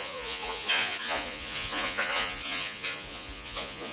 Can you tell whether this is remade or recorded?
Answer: remade